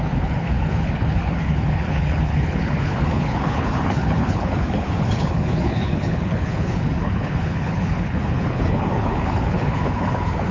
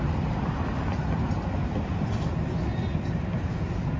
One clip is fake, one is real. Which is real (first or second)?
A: second